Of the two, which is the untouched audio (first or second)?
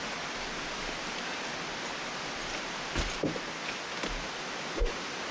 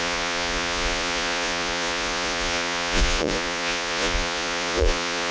first